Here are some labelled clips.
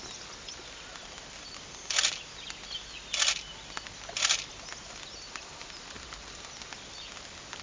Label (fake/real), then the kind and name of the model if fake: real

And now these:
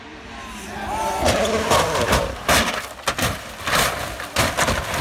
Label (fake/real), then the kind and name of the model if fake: real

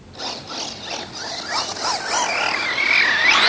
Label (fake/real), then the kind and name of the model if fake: real